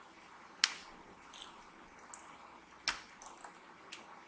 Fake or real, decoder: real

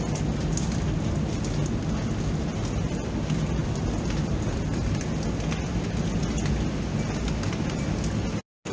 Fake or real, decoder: real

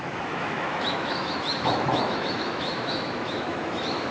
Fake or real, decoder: fake, autoencoder, DAC-VAE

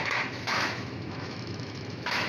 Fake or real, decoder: fake, autoencoder, DAC-VAE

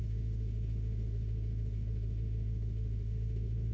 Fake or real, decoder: fake, autoencoder, DAC-VAE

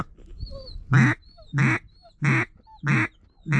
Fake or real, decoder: real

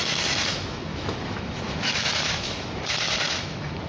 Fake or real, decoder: fake, autoencoder, DAC-VAE